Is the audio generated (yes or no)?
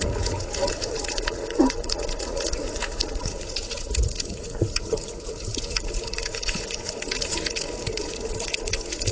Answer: yes